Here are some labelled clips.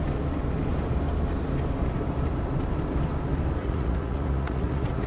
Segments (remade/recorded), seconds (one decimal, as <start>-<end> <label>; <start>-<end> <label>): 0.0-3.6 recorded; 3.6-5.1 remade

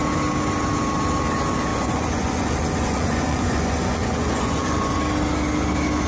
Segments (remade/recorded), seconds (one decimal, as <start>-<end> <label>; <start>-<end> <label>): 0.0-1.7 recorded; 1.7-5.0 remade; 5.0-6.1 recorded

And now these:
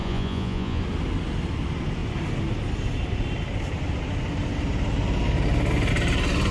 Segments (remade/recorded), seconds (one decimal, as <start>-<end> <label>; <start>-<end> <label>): 0.0-0.8 remade; 0.8-6.5 recorded

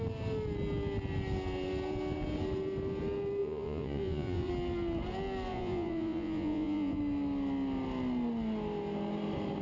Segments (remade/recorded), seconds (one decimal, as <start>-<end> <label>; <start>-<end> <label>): 0.0-3.4 recorded; 3.4-4.5 remade; 4.5-5.5 recorded; 5.5-7.0 remade; 7.0-9.6 recorded

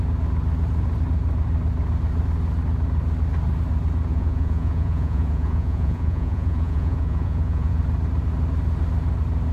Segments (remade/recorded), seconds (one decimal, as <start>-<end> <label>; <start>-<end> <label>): 0.0-4.1 recorded; 4.1-7.8 remade; 7.8-9.5 recorded

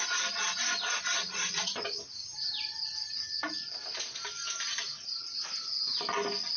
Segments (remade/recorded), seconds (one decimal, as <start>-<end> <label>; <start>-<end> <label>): 0.0-1.2 recorded; 1.2-1.7 remade; 1.7-6.6 recorded

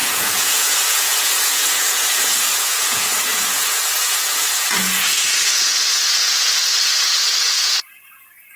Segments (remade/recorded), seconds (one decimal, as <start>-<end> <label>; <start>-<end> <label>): 0.0-8.6 remade